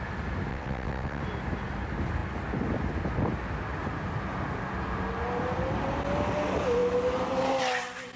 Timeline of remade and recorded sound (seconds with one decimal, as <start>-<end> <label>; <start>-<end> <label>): 0.0-0.5 recorded; 0.5-1.2 remade; 1.2-8.2 recorded